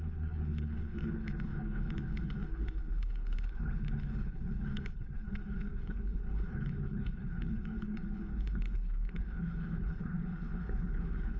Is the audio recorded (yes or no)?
no